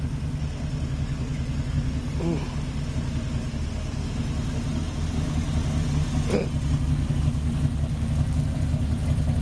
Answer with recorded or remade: recorded